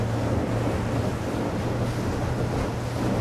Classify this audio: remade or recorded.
recorded